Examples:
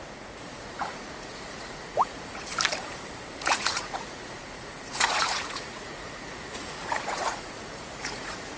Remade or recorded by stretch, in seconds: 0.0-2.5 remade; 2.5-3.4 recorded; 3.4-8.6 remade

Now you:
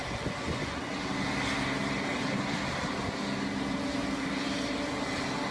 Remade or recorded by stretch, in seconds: 0.0-0.9 remade; 0.9-5.5 recorded

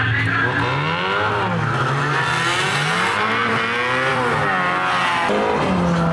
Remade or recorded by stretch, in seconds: 0.0-6.1 recorded

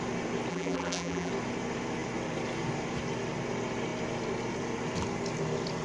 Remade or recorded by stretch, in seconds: 0.0-0.5 recorded; 0.5-1.3 remade; 1.3-5.8 recorded

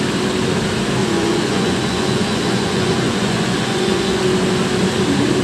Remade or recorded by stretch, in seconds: 0.0-1.0 recorded; 1.0-4.2 remade; 4.2-5.4 recorded

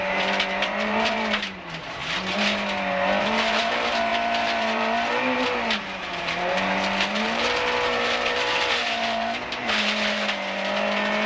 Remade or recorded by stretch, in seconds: 0.0-2.0 remade; 2.0-3.2 recorded; 3.2-11.3 remade

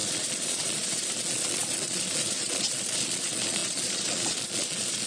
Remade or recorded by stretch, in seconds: 0.0-5.1 remade